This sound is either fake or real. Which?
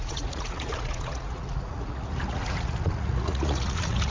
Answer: fake